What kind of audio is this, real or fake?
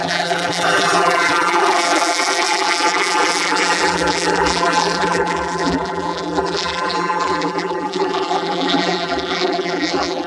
fake